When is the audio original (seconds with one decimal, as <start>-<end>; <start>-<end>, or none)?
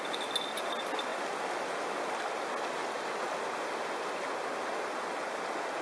0.0-5.8